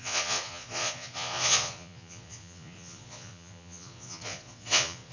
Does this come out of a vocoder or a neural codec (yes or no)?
yes